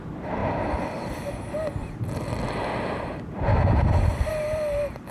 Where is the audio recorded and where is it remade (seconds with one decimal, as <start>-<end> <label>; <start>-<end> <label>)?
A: 0.0-3.5 recorded; 3.5-4.3 remade; 4.3-5.1 recorded